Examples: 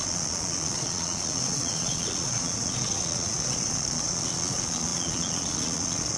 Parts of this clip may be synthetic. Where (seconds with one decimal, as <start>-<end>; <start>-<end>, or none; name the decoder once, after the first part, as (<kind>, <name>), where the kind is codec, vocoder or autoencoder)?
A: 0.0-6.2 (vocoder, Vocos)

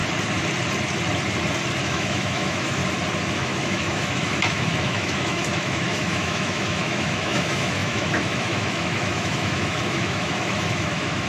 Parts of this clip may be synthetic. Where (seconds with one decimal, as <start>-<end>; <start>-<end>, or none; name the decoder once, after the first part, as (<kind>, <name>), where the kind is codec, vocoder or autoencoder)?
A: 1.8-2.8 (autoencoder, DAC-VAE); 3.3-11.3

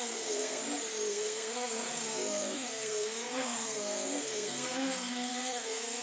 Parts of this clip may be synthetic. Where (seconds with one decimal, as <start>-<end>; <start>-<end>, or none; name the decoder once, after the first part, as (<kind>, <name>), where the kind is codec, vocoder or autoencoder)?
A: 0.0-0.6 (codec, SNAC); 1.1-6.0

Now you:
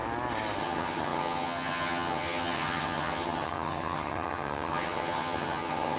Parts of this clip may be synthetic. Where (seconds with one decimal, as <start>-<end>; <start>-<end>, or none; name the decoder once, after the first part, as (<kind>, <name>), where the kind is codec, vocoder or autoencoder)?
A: 0.6-6.0 (vocoder, HiFi-GAN)